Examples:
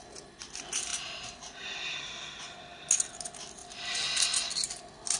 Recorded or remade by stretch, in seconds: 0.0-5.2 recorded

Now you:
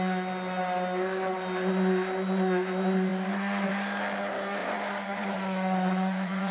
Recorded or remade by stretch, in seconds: 0.0-4.6 recorded; 4.6-6.5 remade

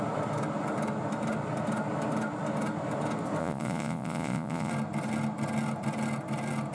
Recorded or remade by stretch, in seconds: 0.0-3.4 recorded; 3.4-4.7 remade; 4.7-6.7 recorded

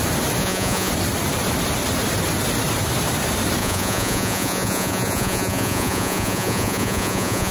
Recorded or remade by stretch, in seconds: 0.0-0.4 recorded; 0.4-0.9 remade; 0.9-3.6 recorded; 3.6-7.5 remade

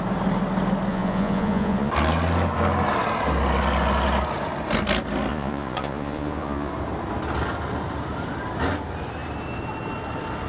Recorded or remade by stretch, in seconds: 0.0-0.9 recorded; 0.9-1.9 remade; 1.9-5.3 recorded; 5.3-6.7 remade; 6.7-10.5 recorded

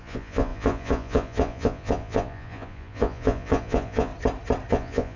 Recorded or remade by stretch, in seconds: 0.0-4.1 remade; 4.1-4.7 recorded; 4.7-5.2 remade

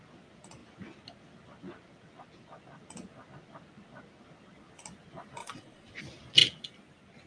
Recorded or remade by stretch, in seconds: 0.0-5.4 recorded; 5.4-6.0 remade; 6.0-7.3 recorded